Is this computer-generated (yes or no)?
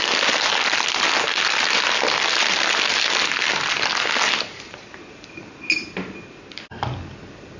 no